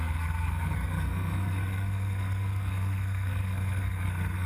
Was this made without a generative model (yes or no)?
no